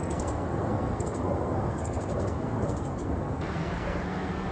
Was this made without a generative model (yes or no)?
no